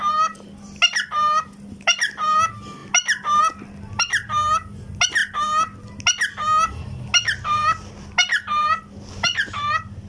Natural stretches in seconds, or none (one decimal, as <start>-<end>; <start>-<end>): 0.0-10.1